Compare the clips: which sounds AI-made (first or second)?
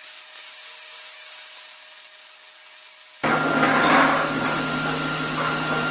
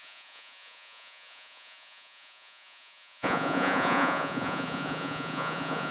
second